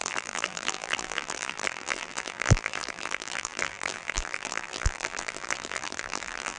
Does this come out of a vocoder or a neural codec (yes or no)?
yes